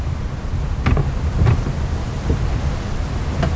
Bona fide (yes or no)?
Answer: yes